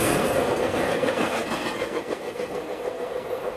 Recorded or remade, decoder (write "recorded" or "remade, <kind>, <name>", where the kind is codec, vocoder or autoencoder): remade, codec, SNAC